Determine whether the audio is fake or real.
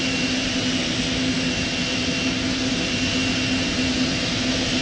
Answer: real